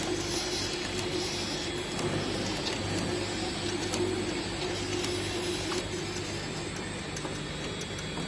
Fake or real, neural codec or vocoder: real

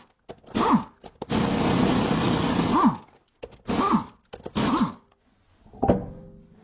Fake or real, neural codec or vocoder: real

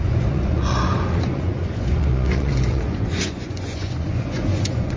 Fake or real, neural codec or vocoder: fake, vocoder, Vocos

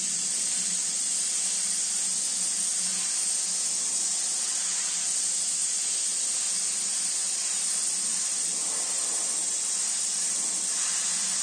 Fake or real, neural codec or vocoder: real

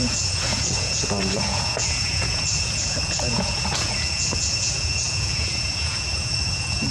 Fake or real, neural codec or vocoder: fake, vocoder, Vocos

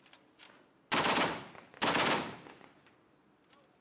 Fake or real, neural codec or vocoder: real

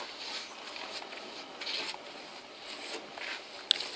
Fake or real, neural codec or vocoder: real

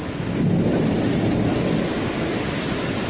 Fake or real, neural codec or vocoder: real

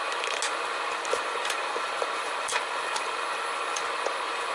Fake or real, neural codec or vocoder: real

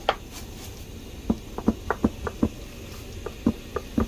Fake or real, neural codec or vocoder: real